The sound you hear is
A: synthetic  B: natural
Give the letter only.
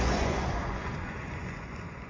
A